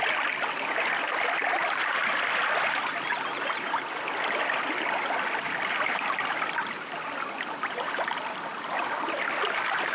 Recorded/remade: recorded